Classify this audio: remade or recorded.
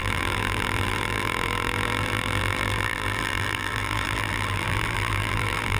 remade